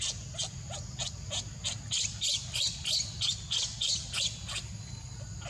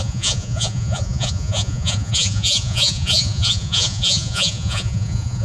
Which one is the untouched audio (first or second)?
first